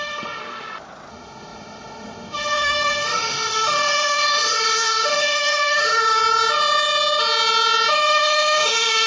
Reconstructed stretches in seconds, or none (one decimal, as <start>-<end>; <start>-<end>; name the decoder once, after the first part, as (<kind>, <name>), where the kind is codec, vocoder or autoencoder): 0.0-0.4 (autoencoder, DAC-VAE); 1.1-6.2; 7.9-9.1